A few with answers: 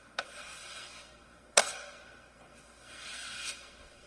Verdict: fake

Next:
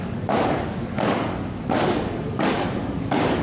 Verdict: fake